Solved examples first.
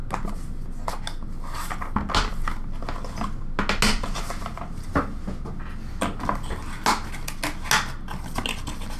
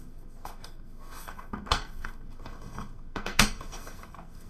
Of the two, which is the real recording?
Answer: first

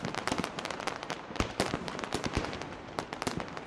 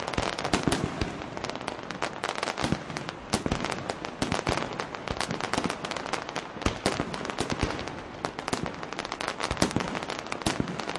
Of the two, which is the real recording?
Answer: second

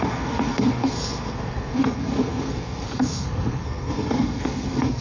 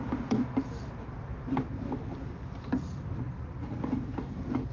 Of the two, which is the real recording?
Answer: second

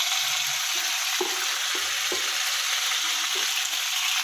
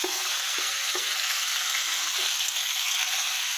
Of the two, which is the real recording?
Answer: first